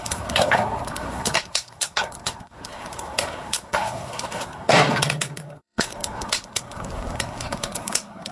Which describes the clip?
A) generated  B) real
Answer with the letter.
A